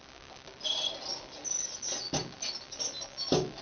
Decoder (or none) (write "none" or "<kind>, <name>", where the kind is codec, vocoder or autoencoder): none